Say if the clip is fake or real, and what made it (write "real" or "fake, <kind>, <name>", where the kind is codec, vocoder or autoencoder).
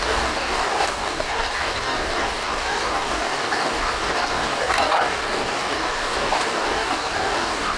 fake, codec, DAC